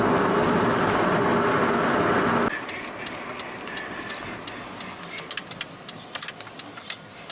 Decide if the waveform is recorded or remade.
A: recorded